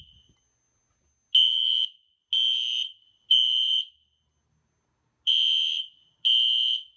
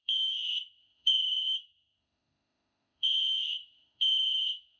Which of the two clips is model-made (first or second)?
second